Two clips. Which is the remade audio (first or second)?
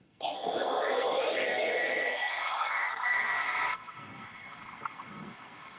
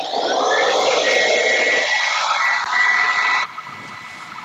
first